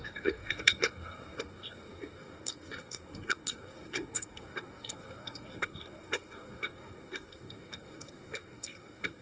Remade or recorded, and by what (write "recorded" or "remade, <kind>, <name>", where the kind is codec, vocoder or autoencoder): remade, codec, SNAC